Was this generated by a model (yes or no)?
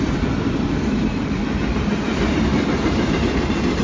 no